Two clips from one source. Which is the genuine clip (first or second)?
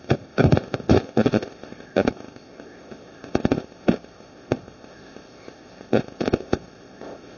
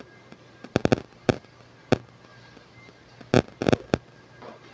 second